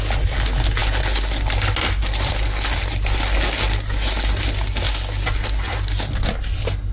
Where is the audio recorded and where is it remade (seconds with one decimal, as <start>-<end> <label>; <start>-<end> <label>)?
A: 0.0-6.9 recorded